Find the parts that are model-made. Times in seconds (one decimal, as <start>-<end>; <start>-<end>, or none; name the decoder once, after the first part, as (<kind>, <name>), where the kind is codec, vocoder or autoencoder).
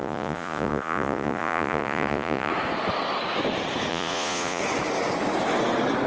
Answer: 0.0-2.5 (vocoder, Vocos); 3.9-4.6